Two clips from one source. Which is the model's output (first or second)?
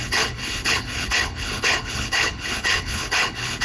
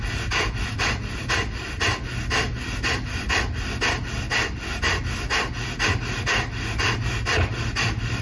first